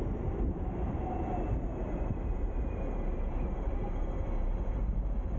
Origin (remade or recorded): remade